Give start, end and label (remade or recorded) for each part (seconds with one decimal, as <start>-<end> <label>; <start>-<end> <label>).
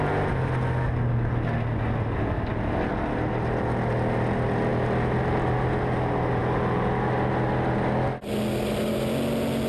0.0-9.7 recorded